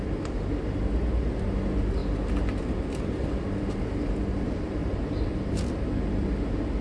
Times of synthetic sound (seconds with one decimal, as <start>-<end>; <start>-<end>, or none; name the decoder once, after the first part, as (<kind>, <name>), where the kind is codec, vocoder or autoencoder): none